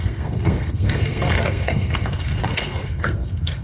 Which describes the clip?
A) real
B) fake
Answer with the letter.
B